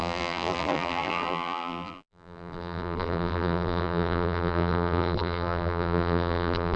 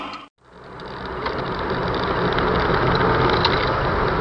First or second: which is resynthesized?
first